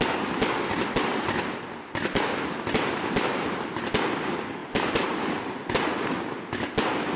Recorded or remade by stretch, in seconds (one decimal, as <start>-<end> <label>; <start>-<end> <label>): 0.0-4.6 recorded; 4.6-5.2 remade; 5.2-7.2 recorded